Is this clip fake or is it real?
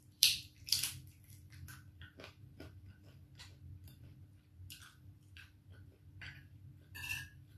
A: fake